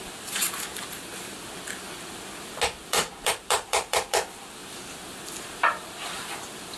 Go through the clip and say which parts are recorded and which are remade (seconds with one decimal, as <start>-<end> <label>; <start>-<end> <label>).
0.0-0.4 remade; 0.4-2.9 recorded; 2.9-4.6 remade; 4.6-5.4 recorded; 5.4-6.8 remade